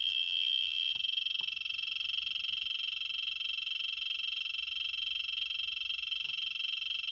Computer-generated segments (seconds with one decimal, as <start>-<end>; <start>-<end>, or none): 0.0-0.9